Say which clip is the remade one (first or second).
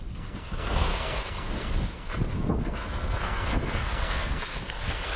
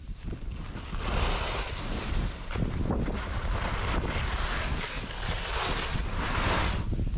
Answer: first